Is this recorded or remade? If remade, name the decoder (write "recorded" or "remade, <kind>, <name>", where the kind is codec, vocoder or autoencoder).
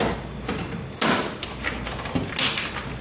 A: recorded